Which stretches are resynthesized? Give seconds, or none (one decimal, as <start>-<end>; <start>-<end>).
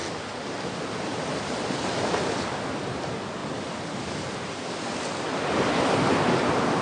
none